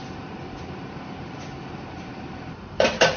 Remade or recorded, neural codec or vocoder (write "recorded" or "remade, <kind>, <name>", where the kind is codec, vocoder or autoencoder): remade, vocoder, BigVGAN v2